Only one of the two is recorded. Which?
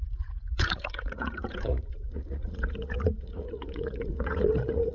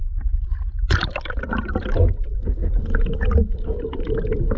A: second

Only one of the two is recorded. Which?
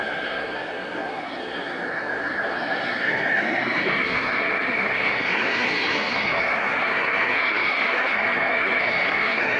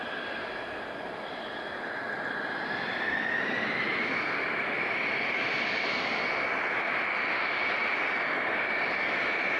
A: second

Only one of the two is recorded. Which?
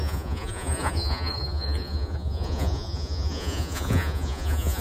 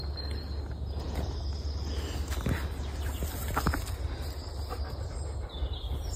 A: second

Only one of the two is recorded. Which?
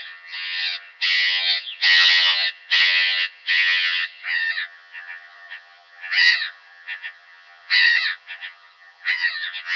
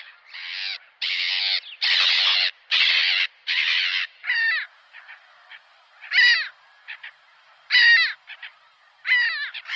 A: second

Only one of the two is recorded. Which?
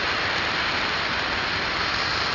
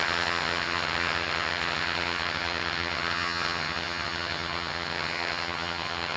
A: first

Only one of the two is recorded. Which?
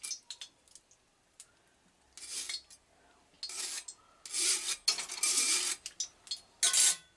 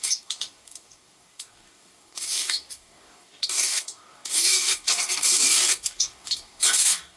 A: first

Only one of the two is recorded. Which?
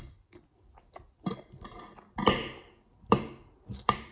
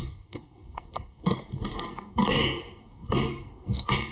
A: first